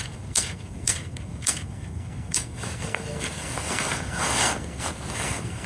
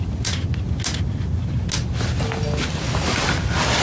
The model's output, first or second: first